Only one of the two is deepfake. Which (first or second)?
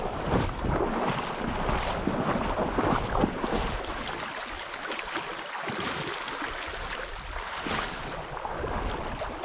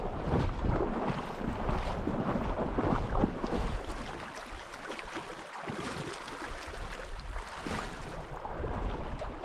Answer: second